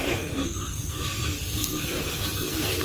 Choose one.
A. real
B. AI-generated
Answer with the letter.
B